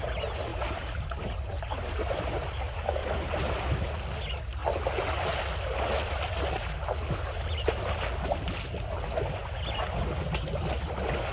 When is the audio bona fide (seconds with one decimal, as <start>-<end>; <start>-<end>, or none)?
0.0-0.5; 2.5-3.0; 3.9-11.3